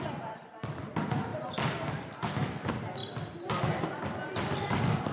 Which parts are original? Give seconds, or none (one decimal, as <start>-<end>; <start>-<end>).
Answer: 0.0-5.1